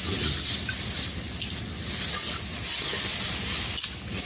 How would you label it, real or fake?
real